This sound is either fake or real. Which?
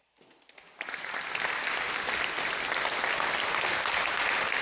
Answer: real